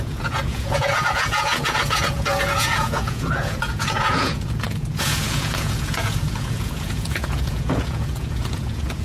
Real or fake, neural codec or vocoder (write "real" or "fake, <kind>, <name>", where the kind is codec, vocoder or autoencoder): fake, vocoder, Vocos